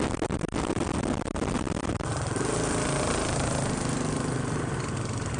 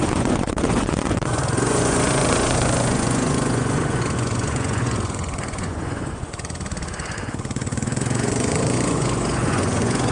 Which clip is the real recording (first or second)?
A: first